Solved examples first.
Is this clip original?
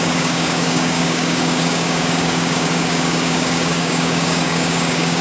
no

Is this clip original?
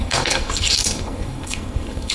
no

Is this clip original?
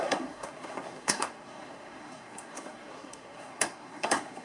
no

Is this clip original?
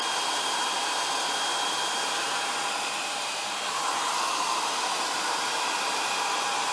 no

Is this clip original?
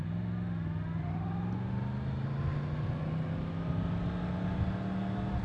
yes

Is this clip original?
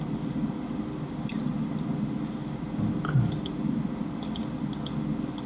yes